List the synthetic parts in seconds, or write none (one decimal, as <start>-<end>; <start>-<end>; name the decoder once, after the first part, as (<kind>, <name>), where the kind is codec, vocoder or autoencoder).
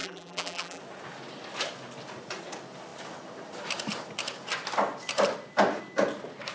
0.0-0.8 (vocoder, BigVGAN v2)